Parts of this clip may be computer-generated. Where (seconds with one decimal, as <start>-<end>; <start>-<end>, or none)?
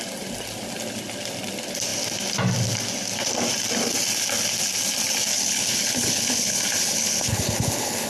5.3-8.1